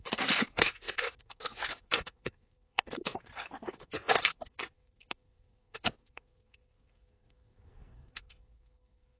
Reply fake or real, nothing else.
fake